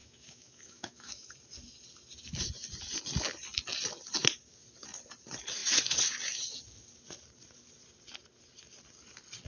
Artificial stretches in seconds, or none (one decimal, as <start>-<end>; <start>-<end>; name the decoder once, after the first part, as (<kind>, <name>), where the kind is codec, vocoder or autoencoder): 0.0-1.3 (autoencoder, DAC-VAE)